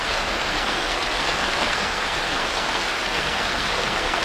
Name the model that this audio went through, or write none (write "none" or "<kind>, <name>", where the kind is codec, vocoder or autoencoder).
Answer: codec, SNAC